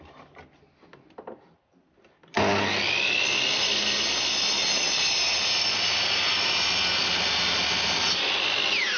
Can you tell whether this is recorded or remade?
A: recorded